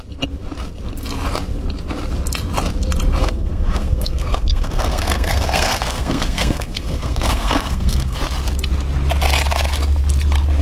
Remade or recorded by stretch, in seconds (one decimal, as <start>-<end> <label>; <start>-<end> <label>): 0.0-3.2 recorded; 3.2-8.2 remade; 8.2-10.6 recorded